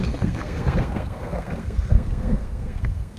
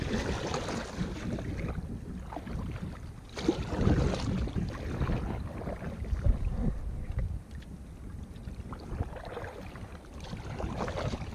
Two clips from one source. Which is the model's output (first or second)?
first